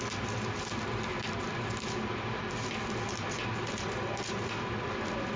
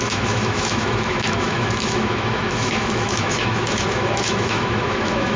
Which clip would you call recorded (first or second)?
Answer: first